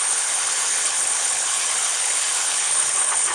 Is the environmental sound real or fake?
fake